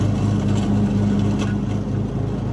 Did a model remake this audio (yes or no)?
no